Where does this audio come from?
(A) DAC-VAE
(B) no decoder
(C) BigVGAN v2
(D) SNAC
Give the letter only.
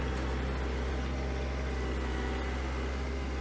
B